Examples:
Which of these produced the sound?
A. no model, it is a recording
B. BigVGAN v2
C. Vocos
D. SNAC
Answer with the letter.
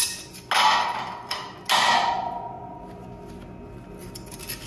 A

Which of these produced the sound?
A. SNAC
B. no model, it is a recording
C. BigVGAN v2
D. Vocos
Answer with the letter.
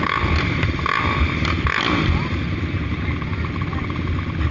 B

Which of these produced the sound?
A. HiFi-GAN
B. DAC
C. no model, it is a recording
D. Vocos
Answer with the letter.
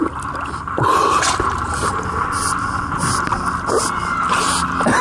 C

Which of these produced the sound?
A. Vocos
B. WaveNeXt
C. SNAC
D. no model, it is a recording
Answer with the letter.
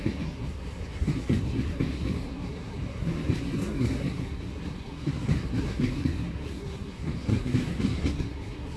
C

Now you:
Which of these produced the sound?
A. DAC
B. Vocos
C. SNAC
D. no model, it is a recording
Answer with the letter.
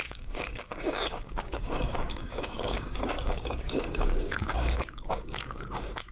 A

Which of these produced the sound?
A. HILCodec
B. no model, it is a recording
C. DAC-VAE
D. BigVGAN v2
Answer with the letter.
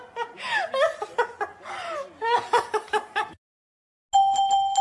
B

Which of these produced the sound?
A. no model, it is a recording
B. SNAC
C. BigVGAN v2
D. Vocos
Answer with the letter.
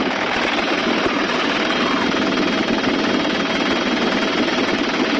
A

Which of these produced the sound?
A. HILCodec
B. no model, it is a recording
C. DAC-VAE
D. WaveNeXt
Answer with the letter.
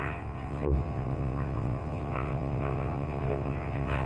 D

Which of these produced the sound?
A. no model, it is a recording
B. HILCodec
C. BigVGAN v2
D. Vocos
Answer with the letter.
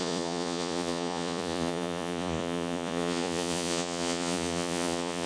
D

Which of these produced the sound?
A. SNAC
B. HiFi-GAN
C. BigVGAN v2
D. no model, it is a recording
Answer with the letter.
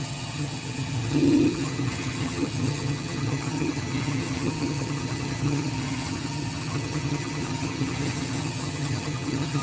B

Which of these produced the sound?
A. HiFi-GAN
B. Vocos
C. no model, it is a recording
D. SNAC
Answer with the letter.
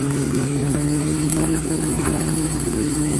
D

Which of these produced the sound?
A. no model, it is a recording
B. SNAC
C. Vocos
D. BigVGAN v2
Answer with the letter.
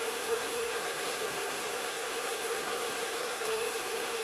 B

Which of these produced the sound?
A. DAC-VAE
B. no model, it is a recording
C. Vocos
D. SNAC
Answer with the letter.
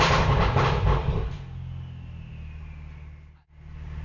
B